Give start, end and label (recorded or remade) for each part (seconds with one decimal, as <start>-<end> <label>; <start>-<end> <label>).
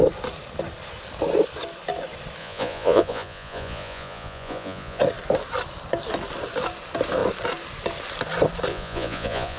0.0-2.4 recorded; 2.4-5.0 remade; 5.0-8.7 recorded; 8.7-9.6 remade